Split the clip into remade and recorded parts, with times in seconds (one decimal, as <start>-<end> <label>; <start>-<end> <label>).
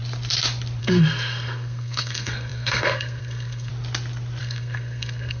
0.0-0.8 recorded; 0.8-3.7 remade; 3.7-4.4 recorded; 4.4-5.4 remade